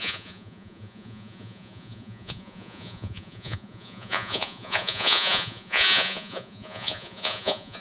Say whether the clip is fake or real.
fake